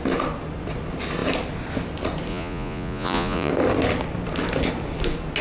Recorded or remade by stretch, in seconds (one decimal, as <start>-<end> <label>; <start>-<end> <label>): 0.0-2.3 recorded; 2.3-3.5 remade; 3.5-5.4 recorded